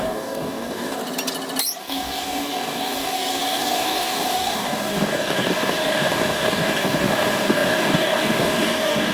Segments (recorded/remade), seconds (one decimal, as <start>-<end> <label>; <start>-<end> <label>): 0.0-1.0 remade; 1.0-1.8 recorded; 1.8-9.1 remade